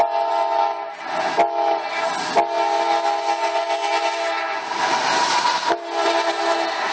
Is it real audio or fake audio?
real